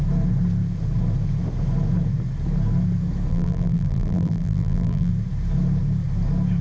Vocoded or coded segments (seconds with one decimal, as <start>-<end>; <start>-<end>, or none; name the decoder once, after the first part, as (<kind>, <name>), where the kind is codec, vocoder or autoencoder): 3.3-5.1 (vocoder, BigVGAN v2)